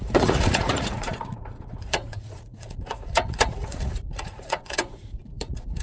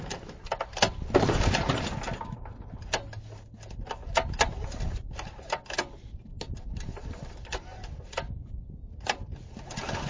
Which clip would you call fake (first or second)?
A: first